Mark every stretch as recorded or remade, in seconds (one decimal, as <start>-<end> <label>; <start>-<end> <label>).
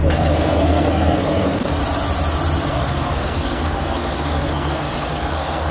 0.0-1.8 remade; 1.8-2.7 recorded; 2.7-5.7 remade